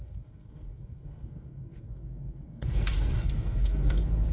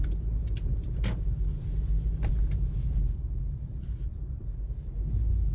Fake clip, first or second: first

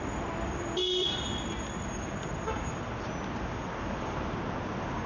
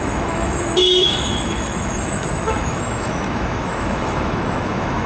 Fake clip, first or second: second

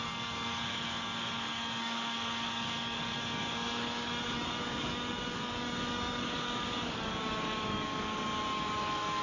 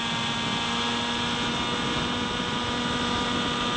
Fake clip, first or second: first